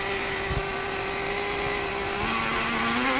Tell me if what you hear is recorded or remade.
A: recorded